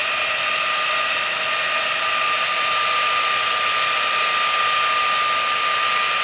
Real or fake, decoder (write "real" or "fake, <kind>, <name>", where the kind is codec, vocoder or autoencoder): real